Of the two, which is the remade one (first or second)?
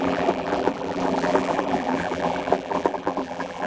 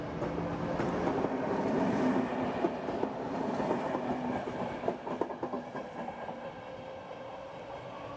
first